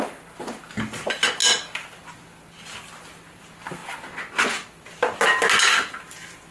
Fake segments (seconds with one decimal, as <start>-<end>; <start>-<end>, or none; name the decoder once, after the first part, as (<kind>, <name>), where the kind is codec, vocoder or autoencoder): none